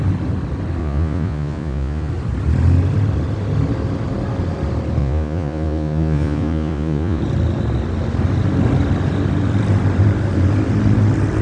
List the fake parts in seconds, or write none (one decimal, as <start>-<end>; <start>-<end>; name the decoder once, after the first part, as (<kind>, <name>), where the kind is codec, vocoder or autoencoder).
0.8-2.1 (vocoder, Vocos); 5.0-7.2